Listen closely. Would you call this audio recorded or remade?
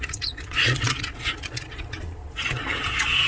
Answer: remade